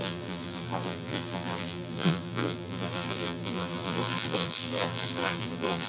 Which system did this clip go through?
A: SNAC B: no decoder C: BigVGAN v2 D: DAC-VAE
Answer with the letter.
C